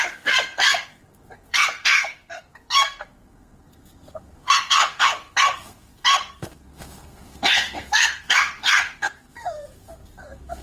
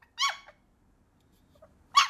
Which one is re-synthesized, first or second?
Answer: first